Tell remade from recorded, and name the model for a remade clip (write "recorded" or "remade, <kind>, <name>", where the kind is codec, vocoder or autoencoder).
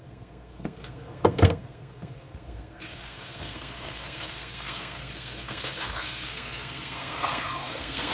remade, codec, SNAC